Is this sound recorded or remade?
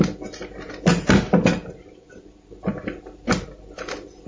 recorded